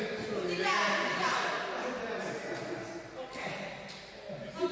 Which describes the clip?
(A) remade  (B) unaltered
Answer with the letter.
B